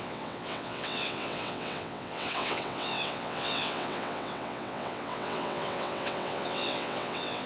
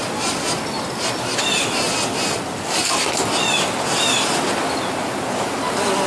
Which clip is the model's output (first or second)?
first